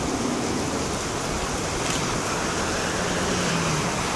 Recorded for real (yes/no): yes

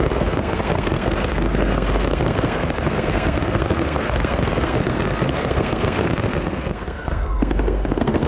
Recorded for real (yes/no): no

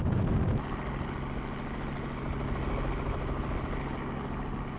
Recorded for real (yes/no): yes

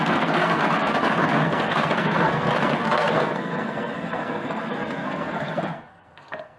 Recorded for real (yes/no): no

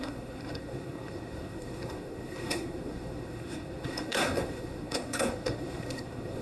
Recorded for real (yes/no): no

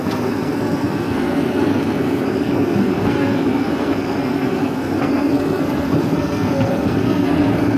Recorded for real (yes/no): no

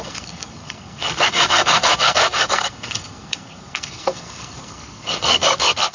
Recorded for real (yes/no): no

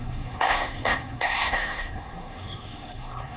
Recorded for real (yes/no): no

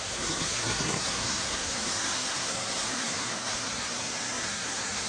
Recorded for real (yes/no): no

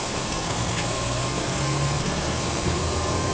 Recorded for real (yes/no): no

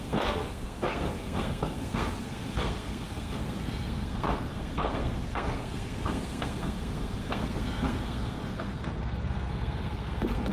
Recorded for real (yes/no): no